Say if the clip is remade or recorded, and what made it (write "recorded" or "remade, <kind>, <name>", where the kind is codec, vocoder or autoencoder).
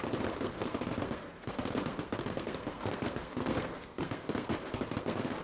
remade, codec, SNAC